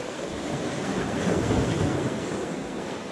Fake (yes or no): yes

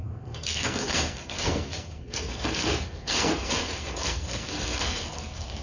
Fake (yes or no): yes